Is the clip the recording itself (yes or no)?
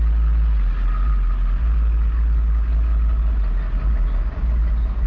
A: yes